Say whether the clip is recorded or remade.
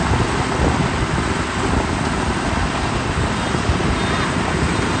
recorded